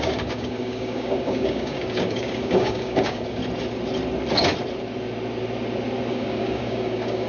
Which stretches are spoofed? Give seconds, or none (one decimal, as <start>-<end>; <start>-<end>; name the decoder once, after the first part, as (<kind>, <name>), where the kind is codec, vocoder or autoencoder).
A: 0.0-3.4 (codec, DAC); 6.1-7.3